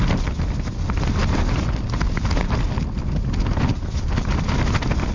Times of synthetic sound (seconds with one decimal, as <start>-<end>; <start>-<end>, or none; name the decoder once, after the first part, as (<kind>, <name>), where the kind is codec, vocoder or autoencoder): none